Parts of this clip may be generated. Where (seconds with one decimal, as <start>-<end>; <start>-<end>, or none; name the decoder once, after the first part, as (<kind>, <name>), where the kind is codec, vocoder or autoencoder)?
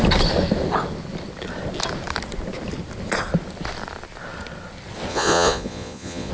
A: 5.1-6.3 (vocoder, Vocos)